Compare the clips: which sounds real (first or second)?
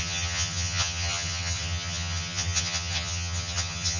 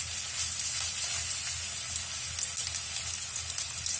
second